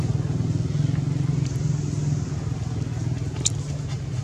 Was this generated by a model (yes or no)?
no